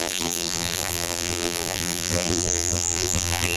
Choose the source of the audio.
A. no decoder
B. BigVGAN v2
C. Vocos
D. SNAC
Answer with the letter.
B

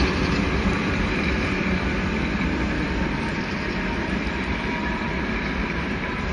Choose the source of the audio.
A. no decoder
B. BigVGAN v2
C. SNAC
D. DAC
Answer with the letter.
B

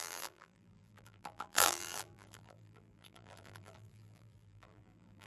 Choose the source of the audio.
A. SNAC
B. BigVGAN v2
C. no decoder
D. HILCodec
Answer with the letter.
B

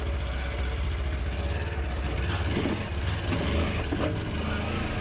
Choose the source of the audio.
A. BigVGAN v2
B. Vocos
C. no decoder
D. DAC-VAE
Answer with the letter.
C